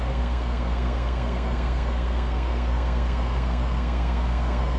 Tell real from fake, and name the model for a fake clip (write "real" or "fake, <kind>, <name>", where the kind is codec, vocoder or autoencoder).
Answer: fake, codec, SNAC